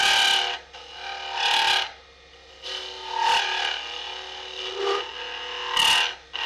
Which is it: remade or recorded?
recorded